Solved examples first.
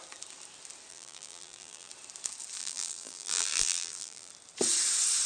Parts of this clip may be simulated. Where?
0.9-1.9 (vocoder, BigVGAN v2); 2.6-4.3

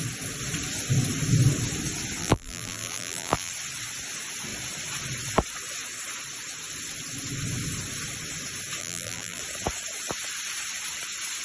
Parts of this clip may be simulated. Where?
2.2-3.5 (vocoder, BigVGAN v2); 8.8-9.4

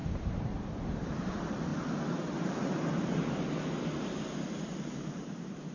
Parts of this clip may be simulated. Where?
0.0-1.7 (vocoder, BigVGAN v2); 5.1-5.7

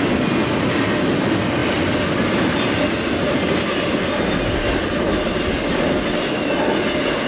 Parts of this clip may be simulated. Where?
none